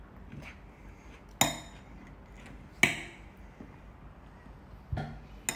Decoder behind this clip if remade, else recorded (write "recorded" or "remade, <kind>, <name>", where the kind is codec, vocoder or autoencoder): recorded